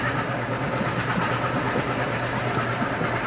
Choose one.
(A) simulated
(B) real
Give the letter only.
A